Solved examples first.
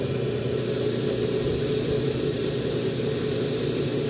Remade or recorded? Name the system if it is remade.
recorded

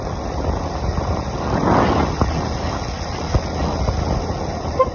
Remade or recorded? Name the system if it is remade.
recorded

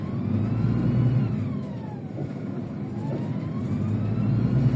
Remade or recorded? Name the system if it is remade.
recorded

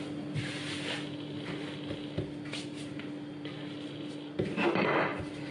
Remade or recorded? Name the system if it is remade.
recorded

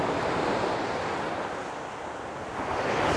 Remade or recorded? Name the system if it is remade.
recorded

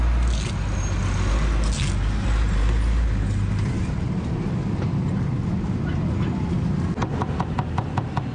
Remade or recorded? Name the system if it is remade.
recorded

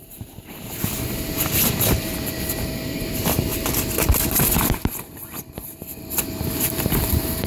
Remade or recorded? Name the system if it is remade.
remade, vocoder, BigVGAN v2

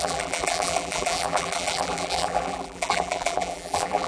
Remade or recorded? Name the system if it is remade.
remade, vocoder, BigVGAN v2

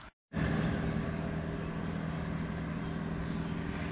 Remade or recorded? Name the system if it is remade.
recorded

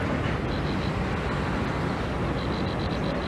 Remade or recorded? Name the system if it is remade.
recorded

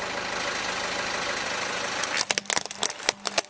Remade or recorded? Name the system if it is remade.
recorded